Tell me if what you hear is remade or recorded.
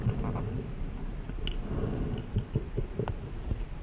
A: recorded